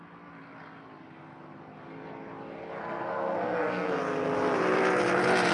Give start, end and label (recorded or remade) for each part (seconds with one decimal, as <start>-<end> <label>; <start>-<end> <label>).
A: 0.0-2.8 recorded; 2.8-4.0 remade; 4.0-5.5 recorded